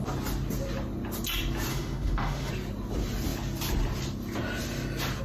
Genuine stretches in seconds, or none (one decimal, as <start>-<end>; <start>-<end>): 0.0-1.7; 2.5-5.2